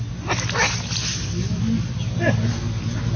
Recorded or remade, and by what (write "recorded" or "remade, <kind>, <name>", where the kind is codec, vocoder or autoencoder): recorded